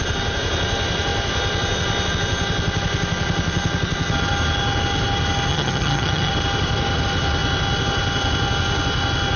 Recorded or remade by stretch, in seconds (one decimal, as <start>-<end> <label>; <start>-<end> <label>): 0.0-5.5 recorded; 5.5-6.3 remade; 6.3-9.4 recorded